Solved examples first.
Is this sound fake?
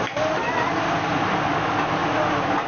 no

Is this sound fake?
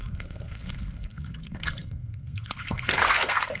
yes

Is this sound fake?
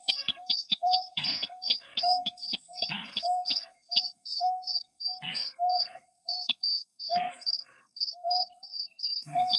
yes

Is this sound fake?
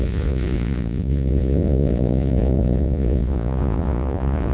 yes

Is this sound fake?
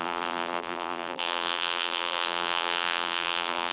yes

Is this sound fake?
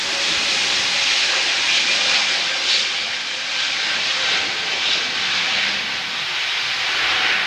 no